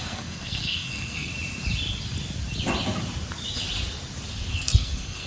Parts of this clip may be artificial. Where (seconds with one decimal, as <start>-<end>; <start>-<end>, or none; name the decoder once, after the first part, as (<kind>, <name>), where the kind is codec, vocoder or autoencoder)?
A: 0.0-1.3 (codec, SNAC); 4.5-5.3